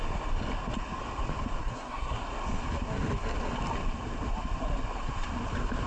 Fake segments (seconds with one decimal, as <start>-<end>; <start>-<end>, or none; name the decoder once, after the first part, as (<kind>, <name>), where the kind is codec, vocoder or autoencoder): 1.6-2.2 (codec, SNAC)